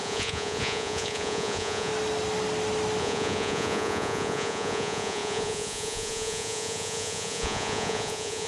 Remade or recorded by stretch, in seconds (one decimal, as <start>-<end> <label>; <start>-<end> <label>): 0.0-1.9 remade; 1.9-3.0 recorded; 3.0-8.5 remade